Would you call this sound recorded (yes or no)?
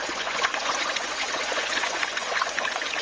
no